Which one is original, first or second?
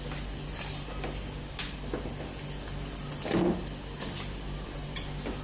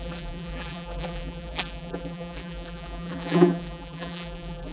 first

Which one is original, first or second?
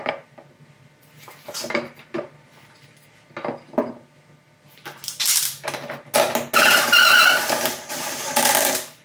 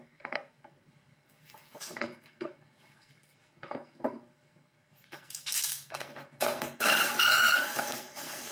first